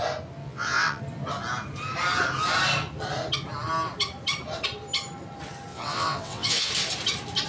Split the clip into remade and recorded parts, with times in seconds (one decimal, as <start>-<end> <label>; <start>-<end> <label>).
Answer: 0.0-0.4 recorded; 0.4-1.0 remade; 1.0-5.7 recorded; 5.7-6.7 remade; 6.7-7.5 recorded